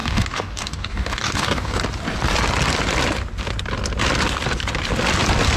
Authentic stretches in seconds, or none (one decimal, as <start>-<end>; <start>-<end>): 1.8-5.6